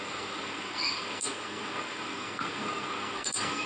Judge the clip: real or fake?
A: fake